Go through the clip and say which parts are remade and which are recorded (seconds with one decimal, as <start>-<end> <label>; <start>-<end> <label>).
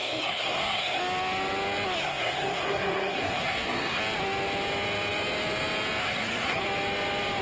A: 0.0-1.0 remade; 1.0-2.0 recorded; 2.0-4.0 remade; 4.0-6.0 recorded; 6.0-6.6 remade; 6.6-7.4 recorded